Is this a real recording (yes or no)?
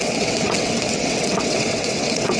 no